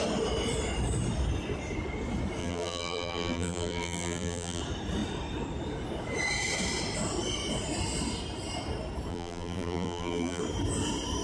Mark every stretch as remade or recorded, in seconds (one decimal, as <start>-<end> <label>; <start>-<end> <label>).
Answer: 0.0-2.4 recorded; 2.4-4.6 remade; 4.6-9.1 recorded; 9.1-10.4 remade; 10.4-11.2 recorded